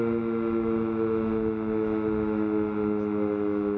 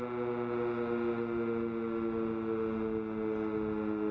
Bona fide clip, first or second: second